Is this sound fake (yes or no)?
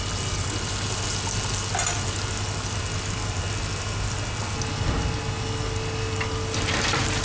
no